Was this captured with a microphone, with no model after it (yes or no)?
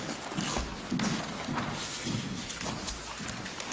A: yes